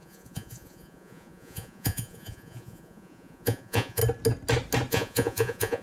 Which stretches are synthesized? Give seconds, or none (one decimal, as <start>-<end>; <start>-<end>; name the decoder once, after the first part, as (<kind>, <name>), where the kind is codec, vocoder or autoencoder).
0.0-4.0 (vocoder, Vocos); 4.9-5.8